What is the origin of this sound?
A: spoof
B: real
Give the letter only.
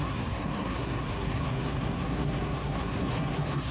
A